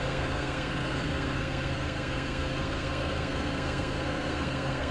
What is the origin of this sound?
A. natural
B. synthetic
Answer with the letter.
B